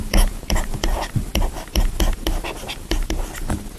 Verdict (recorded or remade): remade